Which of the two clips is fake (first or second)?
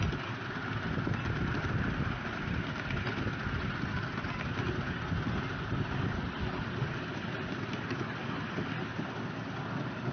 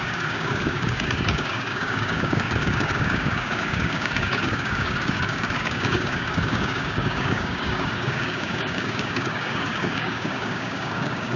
second